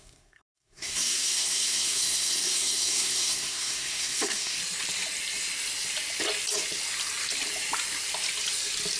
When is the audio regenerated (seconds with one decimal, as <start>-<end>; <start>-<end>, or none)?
0.0-4.6